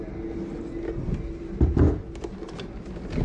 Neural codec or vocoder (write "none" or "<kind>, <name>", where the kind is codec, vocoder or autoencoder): none